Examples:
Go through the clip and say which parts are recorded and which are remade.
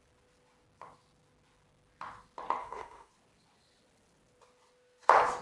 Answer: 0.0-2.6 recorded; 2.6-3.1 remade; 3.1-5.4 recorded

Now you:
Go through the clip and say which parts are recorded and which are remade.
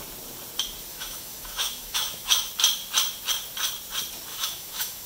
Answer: 0.0-0.9 recorded; 0.9-2.5 remade; 2.5-4.3 recorded; 4.3-5.1 remade